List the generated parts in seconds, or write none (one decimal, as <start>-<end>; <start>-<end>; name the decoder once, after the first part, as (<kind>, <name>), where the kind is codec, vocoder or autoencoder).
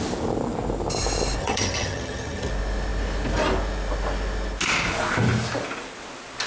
1.4-2.5 (vocoder, HiFi-GAN)